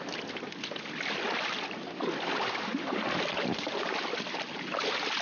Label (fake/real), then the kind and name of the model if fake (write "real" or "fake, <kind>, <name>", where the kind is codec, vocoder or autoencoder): real